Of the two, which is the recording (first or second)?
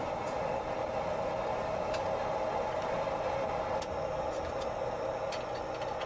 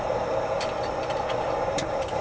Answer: first